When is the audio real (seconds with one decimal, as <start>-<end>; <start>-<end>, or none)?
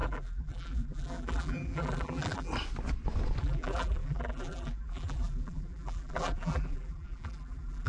2.5-3.4